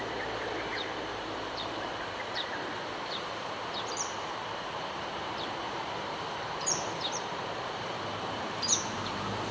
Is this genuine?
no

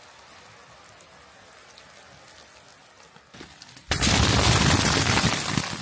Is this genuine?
yes